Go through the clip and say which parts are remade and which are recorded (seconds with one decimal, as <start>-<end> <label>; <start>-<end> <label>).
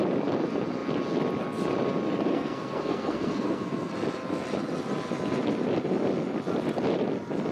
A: 0.0-2.3 recorded; 2.3-3.9 remade; 3.9-7.5 recorded